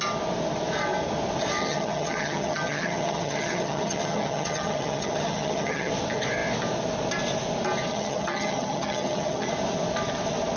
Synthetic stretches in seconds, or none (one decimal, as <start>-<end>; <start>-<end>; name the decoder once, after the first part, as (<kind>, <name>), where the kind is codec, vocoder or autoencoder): 1.6-5.9 (vocoder, HiFi-GAN); 7.9-9.5

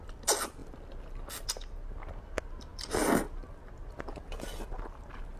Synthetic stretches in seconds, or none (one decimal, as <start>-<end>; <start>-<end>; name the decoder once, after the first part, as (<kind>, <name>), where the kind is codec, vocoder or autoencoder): none